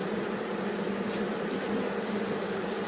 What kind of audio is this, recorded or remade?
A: recorded